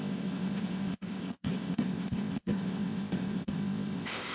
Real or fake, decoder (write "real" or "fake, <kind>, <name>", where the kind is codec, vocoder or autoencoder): fake, codec, ZipCodec